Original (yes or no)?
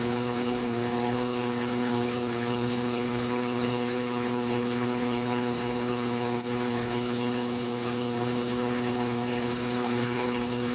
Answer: no